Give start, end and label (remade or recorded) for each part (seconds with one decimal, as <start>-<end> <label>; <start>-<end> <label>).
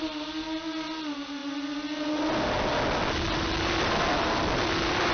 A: 0.0-5.1 recorded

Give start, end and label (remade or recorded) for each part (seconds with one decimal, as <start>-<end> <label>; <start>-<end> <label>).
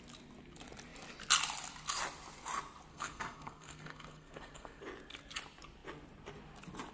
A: 0.0-2.9 recorded; 2.9-4.8 remade; 4.8-6.9 recorded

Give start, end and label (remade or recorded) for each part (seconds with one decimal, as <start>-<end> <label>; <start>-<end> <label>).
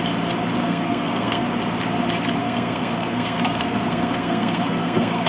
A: 0.0-0.6 recorded; 0.6-1.4 remade; 1.4-2.4 recorded; 2.4-5.3 remade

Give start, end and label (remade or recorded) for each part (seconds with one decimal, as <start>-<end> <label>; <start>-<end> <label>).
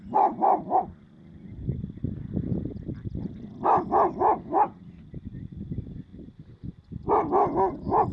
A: 0.0-8.1 remade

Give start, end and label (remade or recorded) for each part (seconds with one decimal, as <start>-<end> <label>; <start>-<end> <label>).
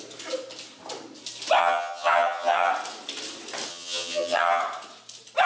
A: 0.0-1.6 recorded; 1.6-2.7 remade; 2.7-3.7 recorded; 3.7-4.6 remade; 4.6-5.5 recorded